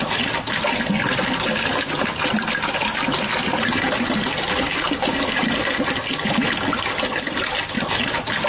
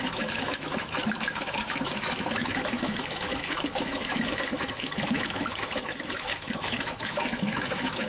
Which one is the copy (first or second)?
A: second